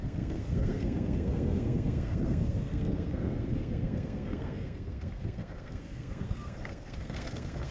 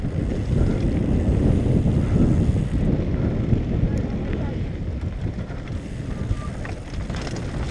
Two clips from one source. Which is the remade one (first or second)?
first